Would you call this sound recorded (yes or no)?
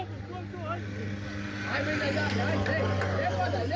yes